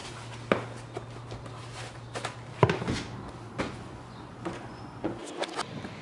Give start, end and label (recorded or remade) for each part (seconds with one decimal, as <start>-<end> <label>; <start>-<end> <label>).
0.0-3.6 recorded; 3.6-5.2 remade; 5.2-6.0 recorded